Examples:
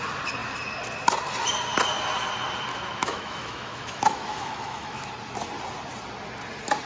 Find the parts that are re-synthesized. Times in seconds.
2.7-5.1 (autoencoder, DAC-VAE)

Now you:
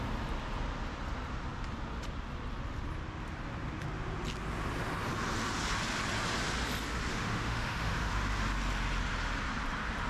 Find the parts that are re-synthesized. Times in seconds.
7.1-8.1 (autoencoder, DAC-VAE)

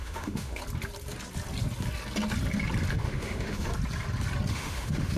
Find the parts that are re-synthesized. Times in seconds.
0.0-0.6 (autoencoder, DAC-VAE); 2.9-3.7; 4.5-5.2

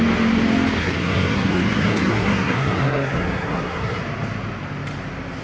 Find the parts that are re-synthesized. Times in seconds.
0.8-4.0 (codec, SNAC)

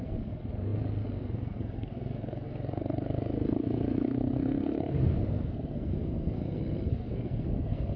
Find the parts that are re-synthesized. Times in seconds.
0.0-8.0 (codec, SNAC)

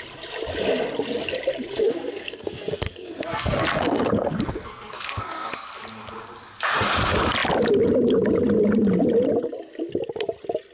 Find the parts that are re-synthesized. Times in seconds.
1.8-5.5 (codec, SNAC)